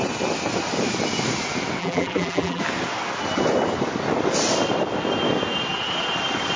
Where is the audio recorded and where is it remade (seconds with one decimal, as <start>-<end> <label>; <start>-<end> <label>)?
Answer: 0.0-1.8 recorded; 1.8-2.6 remade; 2.6-6.6 recorded